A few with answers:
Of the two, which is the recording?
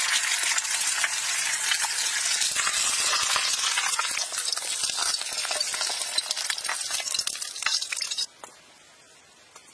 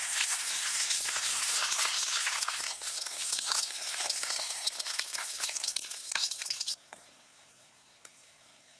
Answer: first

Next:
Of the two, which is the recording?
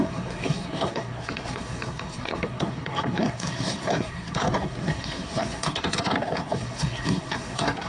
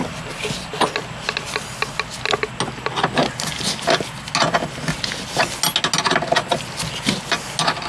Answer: second